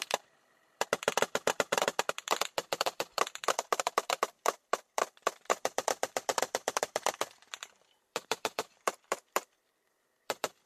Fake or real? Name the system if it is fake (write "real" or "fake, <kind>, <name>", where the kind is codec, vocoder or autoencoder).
fake, vocoder, BigVGAN v2